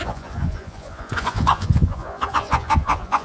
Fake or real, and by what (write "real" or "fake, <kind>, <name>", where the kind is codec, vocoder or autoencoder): fake, vocoder, Vocos